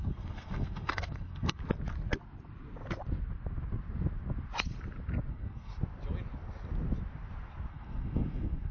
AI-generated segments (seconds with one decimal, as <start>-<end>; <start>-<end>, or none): 0.0-1.6; 5.3-5.7; 7.7-8.7